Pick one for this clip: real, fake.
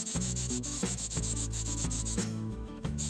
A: fake